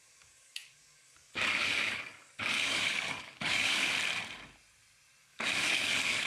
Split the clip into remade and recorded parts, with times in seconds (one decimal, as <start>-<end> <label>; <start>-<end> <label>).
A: 0.0-3.9 remade; 3.9-5.2 recorded; 5.2-6.3 remade